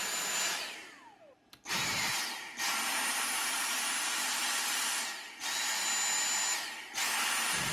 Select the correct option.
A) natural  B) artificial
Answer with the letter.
A